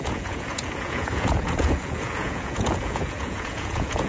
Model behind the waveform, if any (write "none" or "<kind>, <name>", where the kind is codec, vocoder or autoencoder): vocoder, Vocos